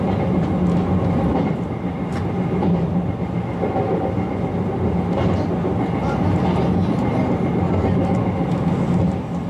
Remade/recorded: recorded